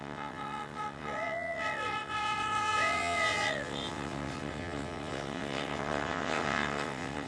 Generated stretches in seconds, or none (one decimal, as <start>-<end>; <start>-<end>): 0.0-7.3

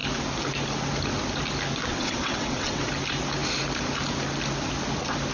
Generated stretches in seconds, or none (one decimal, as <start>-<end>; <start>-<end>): 1.9-2.9